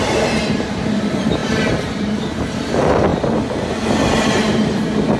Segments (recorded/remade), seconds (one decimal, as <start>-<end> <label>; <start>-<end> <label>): 0.0-5.2 recorded